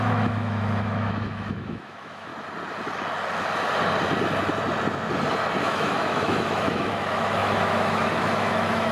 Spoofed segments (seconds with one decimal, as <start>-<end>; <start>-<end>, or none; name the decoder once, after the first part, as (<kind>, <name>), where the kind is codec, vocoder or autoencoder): 0.0-2.3 (autoencoder, DAC-VAE); 5.6-8.9

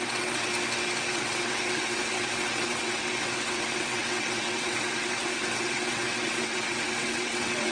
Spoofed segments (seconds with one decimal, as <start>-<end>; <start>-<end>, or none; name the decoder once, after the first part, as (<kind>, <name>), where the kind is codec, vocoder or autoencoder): 0.0-0.5 (vocoder, WaveNeXt); 1.1-7.7

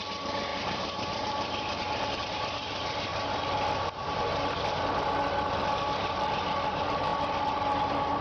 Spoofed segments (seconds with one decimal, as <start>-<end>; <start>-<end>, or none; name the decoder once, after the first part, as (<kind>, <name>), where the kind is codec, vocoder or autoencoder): 0.0-3.1 (vocoder, BigVGAN v2); 5.5-7.1

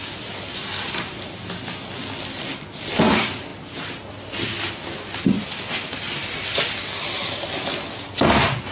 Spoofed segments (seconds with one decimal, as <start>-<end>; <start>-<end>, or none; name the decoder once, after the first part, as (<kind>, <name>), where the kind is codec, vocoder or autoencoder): none